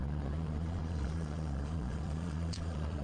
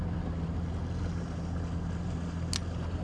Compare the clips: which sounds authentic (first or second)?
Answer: second